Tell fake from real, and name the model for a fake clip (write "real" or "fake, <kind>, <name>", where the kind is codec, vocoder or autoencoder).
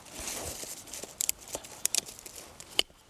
fake, vocoder, BigVGAN v2